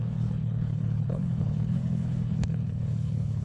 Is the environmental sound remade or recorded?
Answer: remade